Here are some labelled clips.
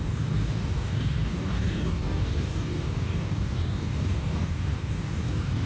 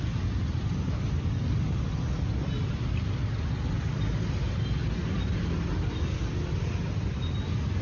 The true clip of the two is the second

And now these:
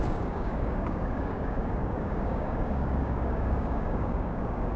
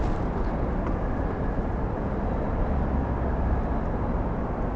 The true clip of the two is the second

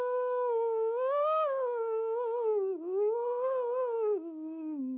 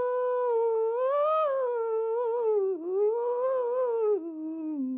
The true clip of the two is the second